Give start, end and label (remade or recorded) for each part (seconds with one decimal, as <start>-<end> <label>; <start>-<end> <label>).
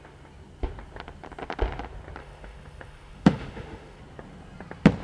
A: 0.0-2.2 recorded; 2.2-4.0 remade; 4.0-5.0 recorded